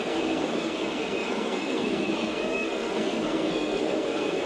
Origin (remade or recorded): remade